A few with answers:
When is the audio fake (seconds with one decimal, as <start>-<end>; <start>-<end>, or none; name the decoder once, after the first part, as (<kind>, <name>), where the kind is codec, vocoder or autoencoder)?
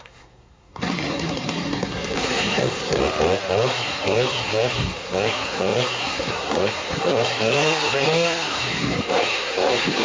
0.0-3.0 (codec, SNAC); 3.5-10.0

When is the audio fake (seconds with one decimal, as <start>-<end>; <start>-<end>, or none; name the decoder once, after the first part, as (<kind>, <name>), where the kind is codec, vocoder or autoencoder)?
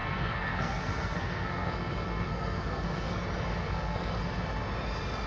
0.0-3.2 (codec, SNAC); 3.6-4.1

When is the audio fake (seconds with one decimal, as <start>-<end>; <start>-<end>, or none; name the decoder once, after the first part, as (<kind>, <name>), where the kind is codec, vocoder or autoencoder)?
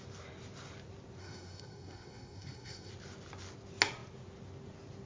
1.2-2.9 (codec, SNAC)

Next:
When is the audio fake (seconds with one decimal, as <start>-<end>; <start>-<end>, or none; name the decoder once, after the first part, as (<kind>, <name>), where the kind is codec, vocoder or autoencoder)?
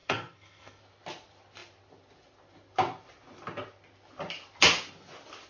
0.0-0.8 (codec, SNAC)